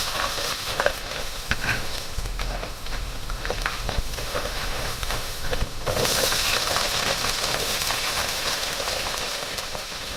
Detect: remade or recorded remade